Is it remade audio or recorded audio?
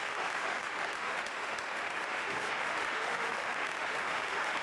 remade